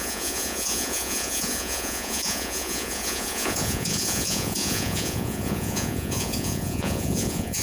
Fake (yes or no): yes